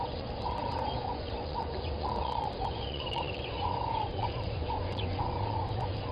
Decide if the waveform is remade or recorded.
remade